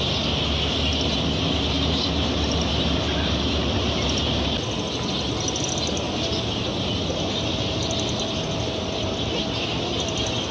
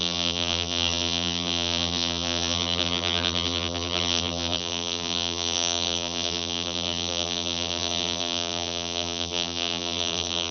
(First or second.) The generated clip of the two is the second